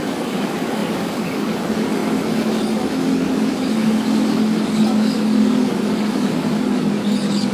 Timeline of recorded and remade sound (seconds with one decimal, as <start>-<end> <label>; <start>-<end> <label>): 0.0-7.5 remade